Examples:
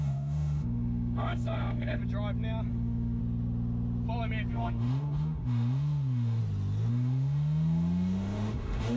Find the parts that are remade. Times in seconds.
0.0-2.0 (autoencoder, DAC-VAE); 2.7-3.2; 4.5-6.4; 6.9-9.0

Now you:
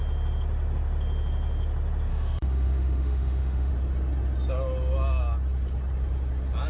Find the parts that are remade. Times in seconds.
2.1-3.7 (autoencoder, DAC-VAE)

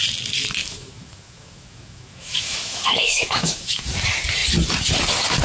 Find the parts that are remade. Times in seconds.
0.6-3.8 (autoencoder, DAC-VAE)